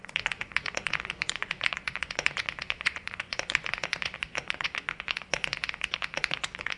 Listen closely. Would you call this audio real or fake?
fake